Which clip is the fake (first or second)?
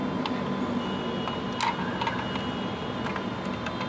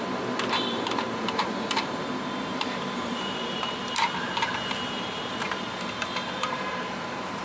second